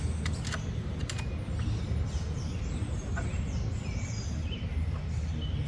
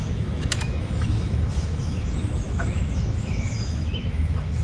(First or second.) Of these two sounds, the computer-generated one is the second